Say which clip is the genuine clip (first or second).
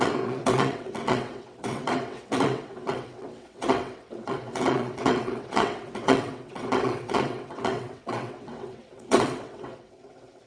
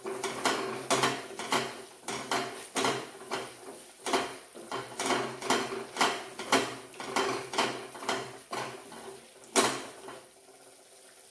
second